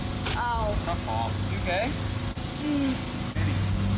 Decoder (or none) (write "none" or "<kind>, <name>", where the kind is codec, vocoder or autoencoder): none